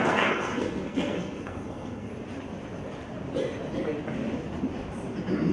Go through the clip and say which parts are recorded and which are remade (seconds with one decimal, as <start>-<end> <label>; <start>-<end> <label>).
0.0-2.1 remade; 2.1-5.5 recorded